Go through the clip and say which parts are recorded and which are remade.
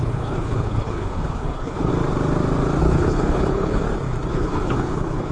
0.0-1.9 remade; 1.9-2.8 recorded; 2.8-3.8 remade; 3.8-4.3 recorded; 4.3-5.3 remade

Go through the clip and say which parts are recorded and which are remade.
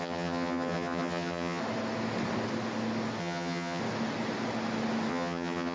0.0-1.6 remade; 1.6-3.2 recorded; 3.2-3.8 remade; 3.8-5.1 recorded; 5.1-5.7 remade